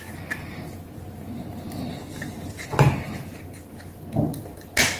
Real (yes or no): yes